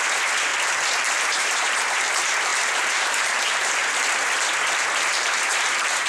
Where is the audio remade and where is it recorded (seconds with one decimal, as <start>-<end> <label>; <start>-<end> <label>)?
0.0-0.5 remade; 0.5-1.1 recorded; 1.1-3.8 remade; 3.8-4.8 recorded; 4.8-6.1 remade